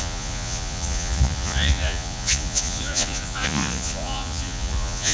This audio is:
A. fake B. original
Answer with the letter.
A